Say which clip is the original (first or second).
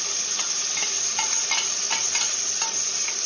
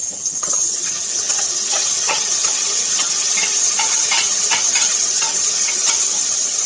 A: first